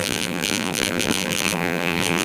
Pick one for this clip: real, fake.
fake